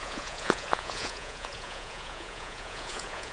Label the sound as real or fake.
fake